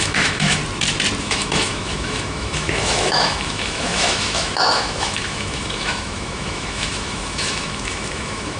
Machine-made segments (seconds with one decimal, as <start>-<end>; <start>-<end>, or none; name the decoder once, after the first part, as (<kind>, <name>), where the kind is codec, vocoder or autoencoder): 0.0-0.6 (autoencoder, DAC-VAE); 1.2-8.6